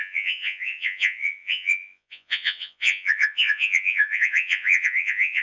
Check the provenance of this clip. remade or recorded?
remade